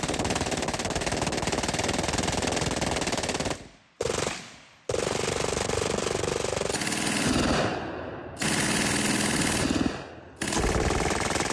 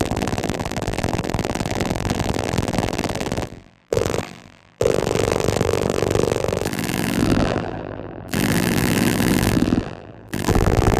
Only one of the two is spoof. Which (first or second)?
second